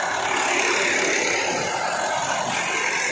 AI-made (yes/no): no